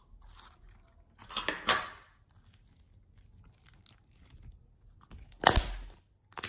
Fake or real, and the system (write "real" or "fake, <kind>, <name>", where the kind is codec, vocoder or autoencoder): real